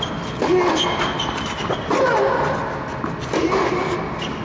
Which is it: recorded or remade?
recorded